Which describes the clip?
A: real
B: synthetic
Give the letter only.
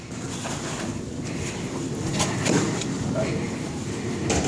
B